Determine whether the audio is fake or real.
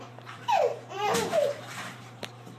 fake